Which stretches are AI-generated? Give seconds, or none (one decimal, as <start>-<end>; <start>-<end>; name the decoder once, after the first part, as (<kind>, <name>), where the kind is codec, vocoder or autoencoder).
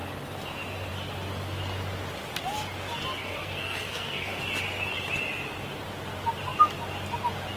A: 3.2-4.4 (codec, SNAC)